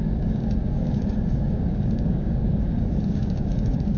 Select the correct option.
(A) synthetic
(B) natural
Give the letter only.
A